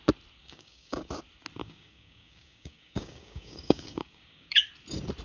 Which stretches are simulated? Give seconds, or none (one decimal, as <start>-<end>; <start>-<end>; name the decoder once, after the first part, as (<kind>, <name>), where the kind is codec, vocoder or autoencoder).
0.4-1.1 (codec, DAC); 1.6-4.7